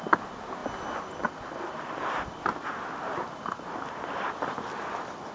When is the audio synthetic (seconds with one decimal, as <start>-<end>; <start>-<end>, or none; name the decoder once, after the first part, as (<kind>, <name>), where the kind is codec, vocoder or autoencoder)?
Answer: none

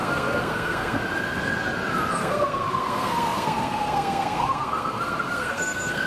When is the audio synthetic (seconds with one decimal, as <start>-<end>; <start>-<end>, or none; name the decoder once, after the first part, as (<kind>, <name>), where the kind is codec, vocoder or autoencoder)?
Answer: 0.0-1.0 (codec, SNAC); 2.1-6.1

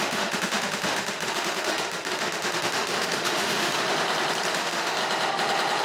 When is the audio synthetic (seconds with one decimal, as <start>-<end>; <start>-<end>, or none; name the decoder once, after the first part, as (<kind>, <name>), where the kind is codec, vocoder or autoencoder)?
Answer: 0.0-3.8 (autoencoder, DAC-VAE); 4.5-5.0

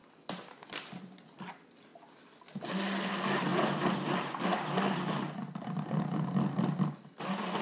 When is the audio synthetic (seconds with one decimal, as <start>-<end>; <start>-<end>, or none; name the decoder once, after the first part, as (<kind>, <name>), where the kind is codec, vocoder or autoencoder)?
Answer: none

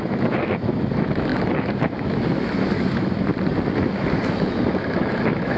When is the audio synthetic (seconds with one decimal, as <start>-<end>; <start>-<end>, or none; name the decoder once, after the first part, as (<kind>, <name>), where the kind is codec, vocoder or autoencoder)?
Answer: 0.0-3.3 (autoencoder, DAC-VAE); 3.8-5.6

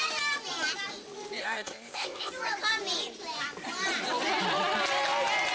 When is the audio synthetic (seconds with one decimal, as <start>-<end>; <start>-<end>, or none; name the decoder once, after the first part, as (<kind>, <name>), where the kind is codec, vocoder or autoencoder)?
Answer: 1.4-2.3 (codec, ZipCodec)

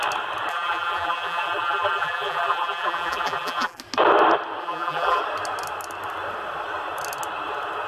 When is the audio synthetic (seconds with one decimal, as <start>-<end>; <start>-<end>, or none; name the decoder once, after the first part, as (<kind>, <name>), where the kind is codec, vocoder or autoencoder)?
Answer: 0.5-3.8 (vocoder, BigVGAN v2); 4.6-5.2